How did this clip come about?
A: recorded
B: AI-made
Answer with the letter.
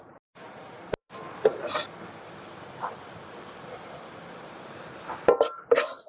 A